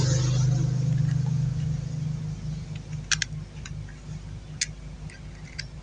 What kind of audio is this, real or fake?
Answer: real